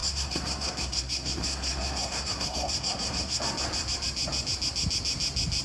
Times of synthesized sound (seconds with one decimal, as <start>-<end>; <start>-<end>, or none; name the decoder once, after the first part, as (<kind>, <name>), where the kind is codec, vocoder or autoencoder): 0.0-3.4 (codec, SNAC)